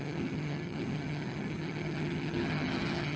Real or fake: fake